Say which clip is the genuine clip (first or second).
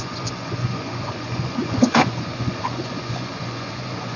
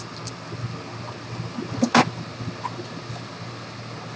second